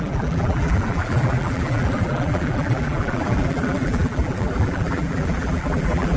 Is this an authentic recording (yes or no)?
no